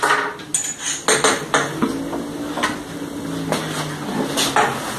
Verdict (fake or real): real